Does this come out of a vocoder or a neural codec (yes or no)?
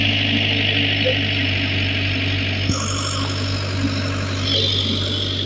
no